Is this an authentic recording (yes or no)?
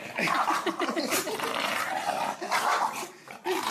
no